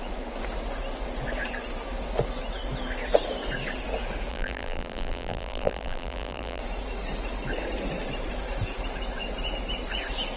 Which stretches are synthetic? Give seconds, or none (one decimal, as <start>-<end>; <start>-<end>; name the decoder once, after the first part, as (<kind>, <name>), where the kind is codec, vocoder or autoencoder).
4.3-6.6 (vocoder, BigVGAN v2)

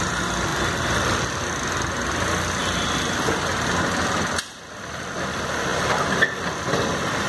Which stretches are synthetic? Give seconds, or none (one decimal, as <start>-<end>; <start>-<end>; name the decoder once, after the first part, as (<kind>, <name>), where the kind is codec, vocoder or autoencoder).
none

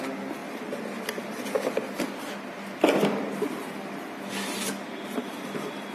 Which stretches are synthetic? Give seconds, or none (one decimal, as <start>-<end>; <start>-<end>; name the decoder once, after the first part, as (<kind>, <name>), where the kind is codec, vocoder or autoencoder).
none

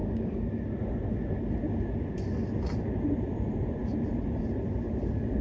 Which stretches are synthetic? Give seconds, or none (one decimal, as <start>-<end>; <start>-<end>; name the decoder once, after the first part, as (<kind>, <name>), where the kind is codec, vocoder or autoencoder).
3.2-5.4 (vocoder, BigVGAN v2)